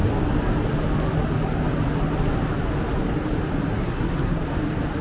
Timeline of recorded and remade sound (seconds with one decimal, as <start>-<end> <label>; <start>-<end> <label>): 0.0-3.7 recorded; 3.7-4.4 remade; 4.4-5.0 recorded